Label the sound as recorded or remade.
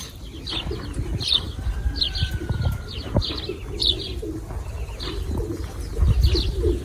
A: recorded